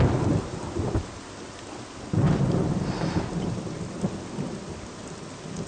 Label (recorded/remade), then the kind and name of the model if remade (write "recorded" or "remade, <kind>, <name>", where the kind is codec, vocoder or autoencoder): recorded